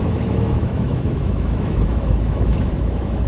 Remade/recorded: remade